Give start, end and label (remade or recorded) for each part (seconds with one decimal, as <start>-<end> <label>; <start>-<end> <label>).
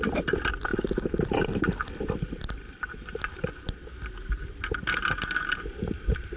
0.0-6.4 recorded